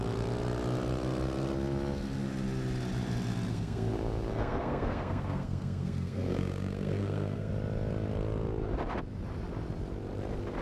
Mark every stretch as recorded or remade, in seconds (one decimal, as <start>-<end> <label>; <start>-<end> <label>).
0.0-3.5 recorded; 3.5-7.5 remade; 7.5-10.6 recorded